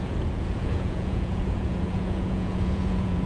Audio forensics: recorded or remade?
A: remade